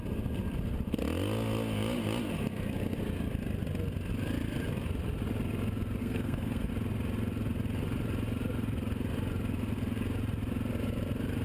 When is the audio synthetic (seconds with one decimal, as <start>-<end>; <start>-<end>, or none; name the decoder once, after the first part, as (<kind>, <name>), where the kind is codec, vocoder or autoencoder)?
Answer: 6.0-6.7 (codec, SNAC)